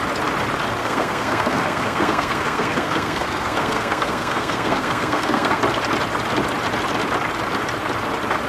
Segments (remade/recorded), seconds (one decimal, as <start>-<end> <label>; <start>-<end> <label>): 0.0-0.8 recorded; 0.8-5.6 remade; 5.6-8.5 recorded